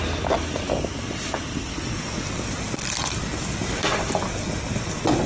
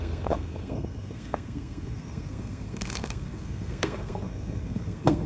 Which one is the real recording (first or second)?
first